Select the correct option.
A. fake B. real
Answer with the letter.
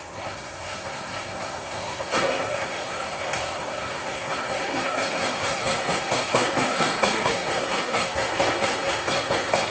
A